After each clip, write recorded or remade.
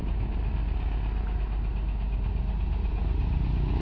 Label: recorded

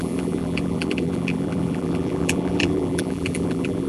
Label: remade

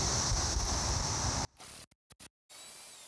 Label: recorded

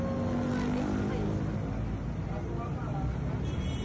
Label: recorded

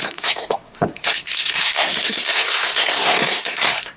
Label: remade